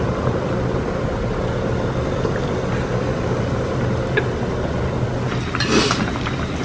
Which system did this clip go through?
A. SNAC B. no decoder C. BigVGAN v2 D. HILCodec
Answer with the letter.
B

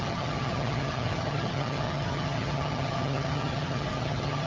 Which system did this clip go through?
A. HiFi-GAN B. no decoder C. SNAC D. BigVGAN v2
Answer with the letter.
A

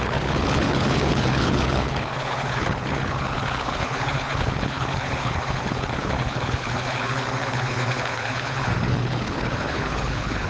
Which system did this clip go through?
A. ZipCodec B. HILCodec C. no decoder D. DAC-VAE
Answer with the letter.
B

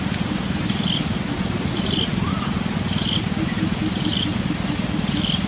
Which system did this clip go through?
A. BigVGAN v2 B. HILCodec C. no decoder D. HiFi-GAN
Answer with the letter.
C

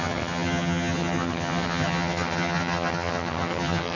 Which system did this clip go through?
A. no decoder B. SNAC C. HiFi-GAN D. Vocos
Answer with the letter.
C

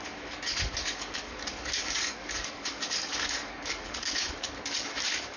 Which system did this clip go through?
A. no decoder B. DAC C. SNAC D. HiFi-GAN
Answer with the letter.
B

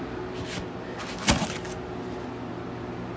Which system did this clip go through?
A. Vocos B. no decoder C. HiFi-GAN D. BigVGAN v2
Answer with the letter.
B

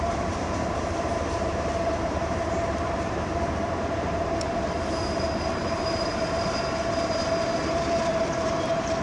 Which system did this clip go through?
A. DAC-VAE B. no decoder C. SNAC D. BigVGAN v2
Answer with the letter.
D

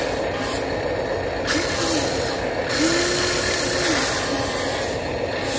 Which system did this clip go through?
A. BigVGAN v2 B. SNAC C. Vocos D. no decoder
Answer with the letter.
D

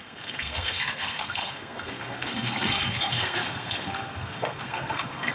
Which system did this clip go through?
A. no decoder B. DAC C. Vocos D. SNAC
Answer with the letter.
D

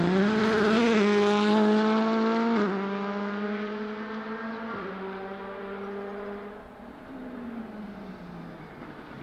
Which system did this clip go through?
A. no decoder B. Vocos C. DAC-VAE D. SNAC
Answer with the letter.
A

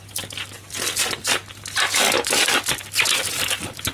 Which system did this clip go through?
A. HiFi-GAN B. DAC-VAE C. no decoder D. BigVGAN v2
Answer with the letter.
C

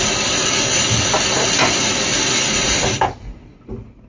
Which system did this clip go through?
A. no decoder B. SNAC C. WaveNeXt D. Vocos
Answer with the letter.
A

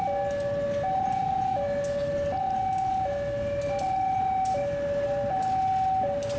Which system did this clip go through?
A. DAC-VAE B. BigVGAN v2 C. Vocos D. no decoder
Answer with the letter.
D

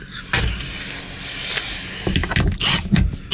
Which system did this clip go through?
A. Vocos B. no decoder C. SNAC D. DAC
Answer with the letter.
B